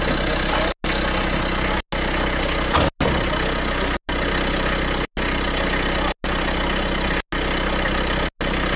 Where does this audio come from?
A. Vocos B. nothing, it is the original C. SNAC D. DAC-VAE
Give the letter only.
B